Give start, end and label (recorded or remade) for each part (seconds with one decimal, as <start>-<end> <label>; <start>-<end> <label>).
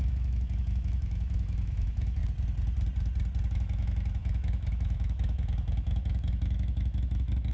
0.0-2.2 remade; 2.2-3.5 recorded; 3.5-7.5 remade